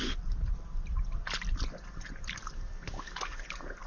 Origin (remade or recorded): recorded